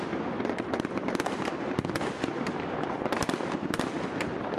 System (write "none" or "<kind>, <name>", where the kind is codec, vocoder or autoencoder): vocoder, BigVGAN v2